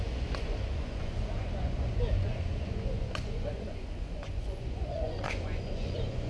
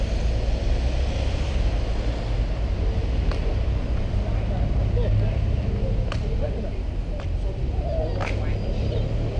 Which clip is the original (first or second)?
second